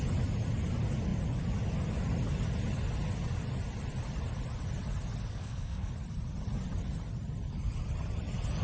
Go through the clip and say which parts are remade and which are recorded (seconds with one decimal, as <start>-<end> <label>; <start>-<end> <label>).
0.0-5.3 recorded; 5.3-5.9 remade; 5.9-8.6 recorded